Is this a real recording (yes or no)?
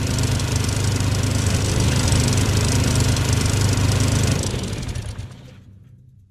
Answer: yes